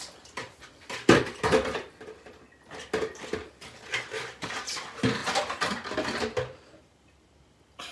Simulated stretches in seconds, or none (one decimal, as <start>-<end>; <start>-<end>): 0.4-2.7; 5.2-6.8